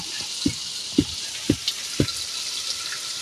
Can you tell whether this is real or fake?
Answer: real